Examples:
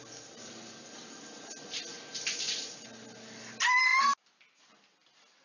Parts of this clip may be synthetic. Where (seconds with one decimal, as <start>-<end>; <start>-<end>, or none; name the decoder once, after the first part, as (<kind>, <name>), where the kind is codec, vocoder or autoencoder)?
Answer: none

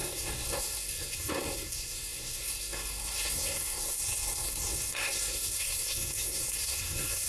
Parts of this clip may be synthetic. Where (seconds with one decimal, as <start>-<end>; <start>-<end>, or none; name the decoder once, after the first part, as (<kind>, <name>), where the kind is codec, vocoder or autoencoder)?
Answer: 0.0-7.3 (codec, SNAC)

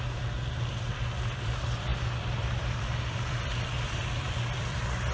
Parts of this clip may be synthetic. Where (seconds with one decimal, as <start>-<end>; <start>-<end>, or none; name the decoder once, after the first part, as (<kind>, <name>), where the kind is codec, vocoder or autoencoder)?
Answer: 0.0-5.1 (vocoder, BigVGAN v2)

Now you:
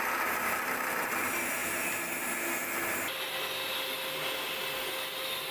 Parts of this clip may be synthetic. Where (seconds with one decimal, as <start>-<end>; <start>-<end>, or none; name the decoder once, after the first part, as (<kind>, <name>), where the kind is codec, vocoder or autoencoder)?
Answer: none

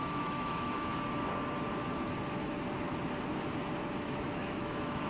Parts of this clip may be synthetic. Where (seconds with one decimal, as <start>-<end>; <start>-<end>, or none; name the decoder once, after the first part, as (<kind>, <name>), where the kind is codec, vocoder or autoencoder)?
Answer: 0.0-0.9 (autoencoder, DAC-VAE); 4.0-5.1